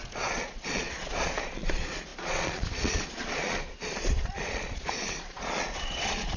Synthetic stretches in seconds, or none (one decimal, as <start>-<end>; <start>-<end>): 0.0-6.4

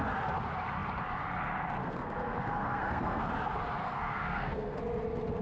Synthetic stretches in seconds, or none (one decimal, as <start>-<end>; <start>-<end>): 1.8-3.3; 3.8-4.8

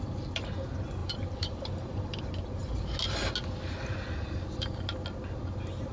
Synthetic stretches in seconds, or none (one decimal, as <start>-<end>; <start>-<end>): 1.0-2.2